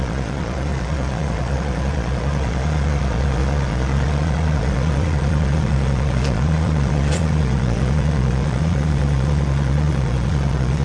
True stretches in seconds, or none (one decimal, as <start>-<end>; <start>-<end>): none